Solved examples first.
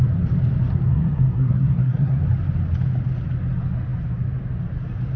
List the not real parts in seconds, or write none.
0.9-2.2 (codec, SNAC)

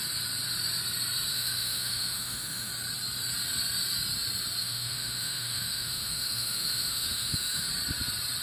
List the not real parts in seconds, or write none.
1.3-2.7 (autoencoder, DAC-VAE); 4.6-7.7

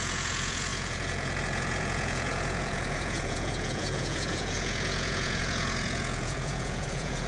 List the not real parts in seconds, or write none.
0.0-7.3 (vocoder, Vocos)

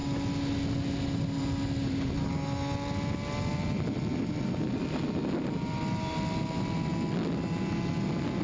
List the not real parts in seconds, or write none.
none

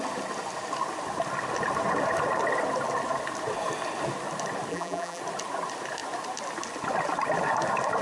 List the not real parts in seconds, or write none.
4.7-5.2 (vocoder, BigVGAN v2)

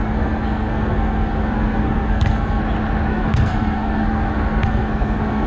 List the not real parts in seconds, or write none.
0.0-2.6 (codec, SNAC); 3.1-5.5